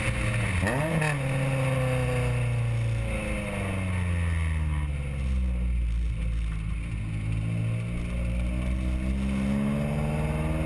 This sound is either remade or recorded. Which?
recorded